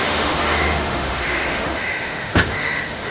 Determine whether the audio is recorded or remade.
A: remade